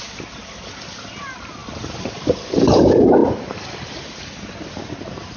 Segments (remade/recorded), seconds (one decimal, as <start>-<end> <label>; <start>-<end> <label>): 0.0-1.6 recorded; 1.6-2.6 remade; 2.6-3.2 recorded; 3.2-4.5 remade; 4.5-5.4 recorded